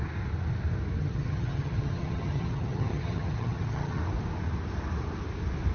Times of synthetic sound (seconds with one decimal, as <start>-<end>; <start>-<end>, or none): 1.0-4.0